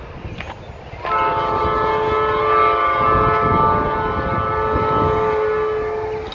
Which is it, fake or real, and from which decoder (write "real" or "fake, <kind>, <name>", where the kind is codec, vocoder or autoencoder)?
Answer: real